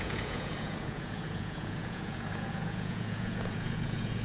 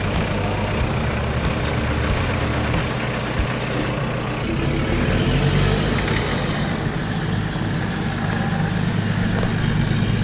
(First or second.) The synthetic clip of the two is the first